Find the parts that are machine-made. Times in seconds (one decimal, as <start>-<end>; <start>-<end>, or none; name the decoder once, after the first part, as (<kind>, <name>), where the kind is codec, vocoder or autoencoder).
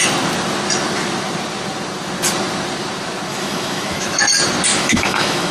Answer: 3.3-4.2 (autoencoder, DAC-VAE); 4.7-5.5